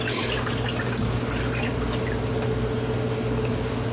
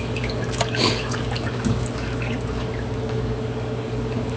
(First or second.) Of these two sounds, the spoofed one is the second